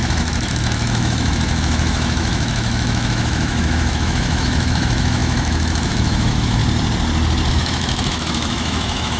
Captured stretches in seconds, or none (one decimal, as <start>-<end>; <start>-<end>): 6.6-7.5